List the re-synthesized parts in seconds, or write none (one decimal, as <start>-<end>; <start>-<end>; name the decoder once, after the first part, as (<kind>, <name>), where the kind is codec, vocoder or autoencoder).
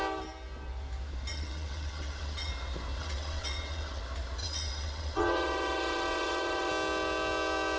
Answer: 1.3-2.5 (vocoder, WaveNeXt); 3.0-4.0; 4.4-6.7